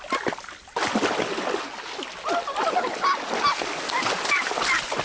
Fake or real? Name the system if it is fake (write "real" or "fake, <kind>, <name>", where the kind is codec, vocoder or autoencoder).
real